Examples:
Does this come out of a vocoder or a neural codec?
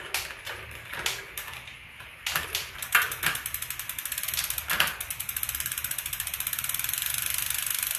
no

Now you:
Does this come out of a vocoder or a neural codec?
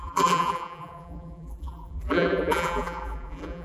yes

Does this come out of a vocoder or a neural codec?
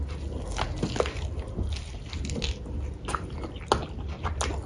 no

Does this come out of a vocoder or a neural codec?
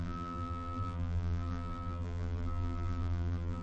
yes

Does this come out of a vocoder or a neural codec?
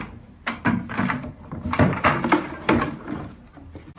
yes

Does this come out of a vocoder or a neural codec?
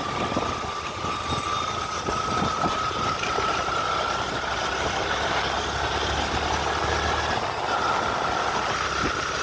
no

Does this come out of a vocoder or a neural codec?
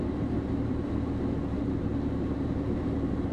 yes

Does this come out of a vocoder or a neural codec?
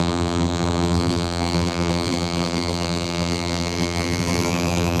yes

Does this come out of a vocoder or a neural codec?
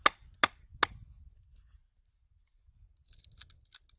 no